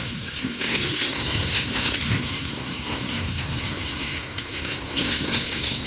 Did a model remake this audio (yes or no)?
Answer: yes